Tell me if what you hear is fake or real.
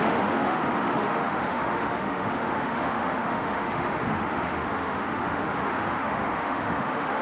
fake